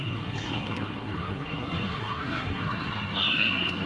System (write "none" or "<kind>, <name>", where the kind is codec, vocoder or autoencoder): codec, SNAC